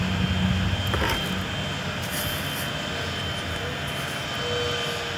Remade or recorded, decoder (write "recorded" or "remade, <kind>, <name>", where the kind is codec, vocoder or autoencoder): recorded